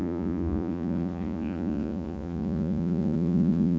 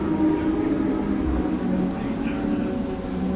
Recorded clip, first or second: second